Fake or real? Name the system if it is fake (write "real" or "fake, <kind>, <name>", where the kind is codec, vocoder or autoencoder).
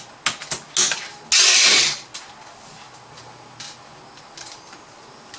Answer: real